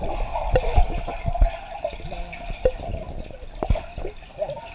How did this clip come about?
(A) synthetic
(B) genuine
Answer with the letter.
B